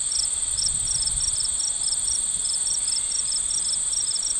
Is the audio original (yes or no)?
yes